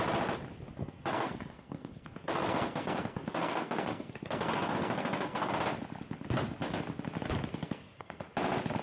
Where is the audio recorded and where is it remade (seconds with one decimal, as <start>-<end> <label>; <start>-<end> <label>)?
0.0-0.8 recorded; 0.8-5.5 remade; 5.5-7.5 recorded; 7.5-8.2 remade; 8.2-8.8 recorded